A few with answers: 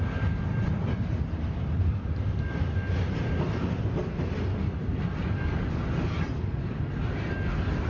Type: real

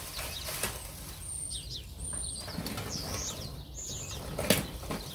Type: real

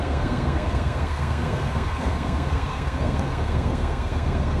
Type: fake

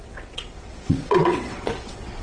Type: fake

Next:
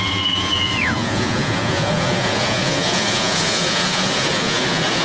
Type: fake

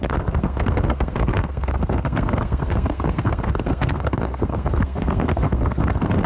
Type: fake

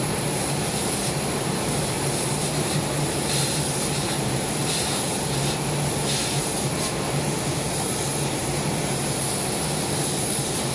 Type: fake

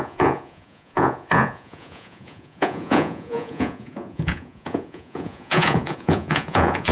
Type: fake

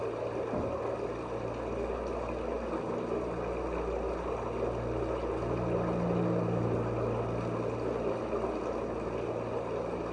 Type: real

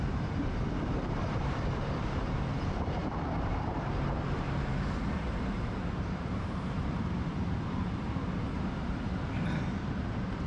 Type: fake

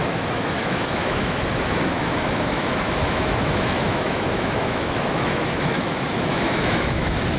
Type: fake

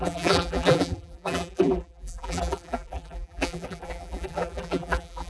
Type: fake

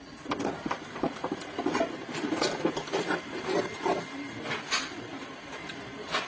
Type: real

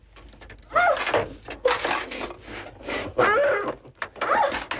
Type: real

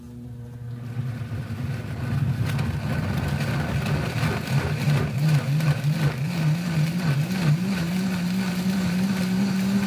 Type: real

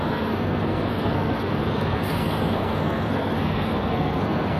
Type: fake